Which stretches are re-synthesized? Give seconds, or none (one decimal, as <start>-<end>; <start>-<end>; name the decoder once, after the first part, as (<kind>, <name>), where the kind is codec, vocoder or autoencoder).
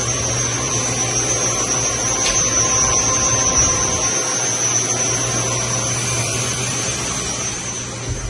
0.0-0.7 (vocoder, Vocos); 6.2-6.7